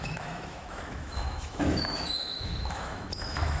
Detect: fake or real fake